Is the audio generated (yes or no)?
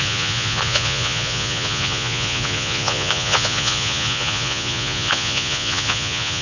yes